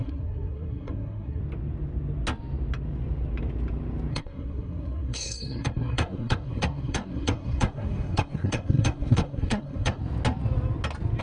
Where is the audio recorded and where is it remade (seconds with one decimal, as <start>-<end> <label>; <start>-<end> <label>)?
0.0-1.4 remade; 1.4-4.1 recorded; 4.1-10.0 remade; 10.0-11.2 recorded